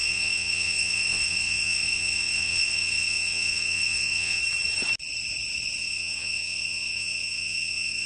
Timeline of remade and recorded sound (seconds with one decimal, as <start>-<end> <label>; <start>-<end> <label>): 0.0-4.4 remade; 4.4-5.8 recorded; 5.8-8.1 remade

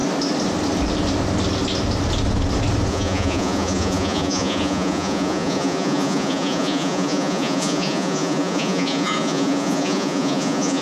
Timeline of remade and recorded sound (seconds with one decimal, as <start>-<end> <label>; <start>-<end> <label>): 0.0-2.9 recorded; 2.9-10.8 remade

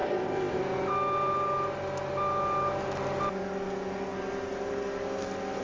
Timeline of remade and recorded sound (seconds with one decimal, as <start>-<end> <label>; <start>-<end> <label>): 0.0-0.6 remade; 0.6-5.6 recorded

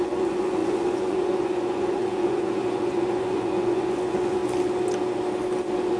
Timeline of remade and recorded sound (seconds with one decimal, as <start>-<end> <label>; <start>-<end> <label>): 0.0-4.4 remade; 4.4-6.0 recorded

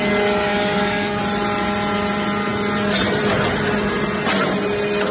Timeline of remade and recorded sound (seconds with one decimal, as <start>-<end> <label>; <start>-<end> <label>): 0.0-0.5 recorded; 0.5-1.2 remade; 1.2-5.1 recorded

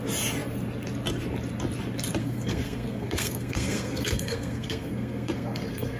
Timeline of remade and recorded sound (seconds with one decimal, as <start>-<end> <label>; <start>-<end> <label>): 0.0-2.2 recorded; 2.2-6.0 remade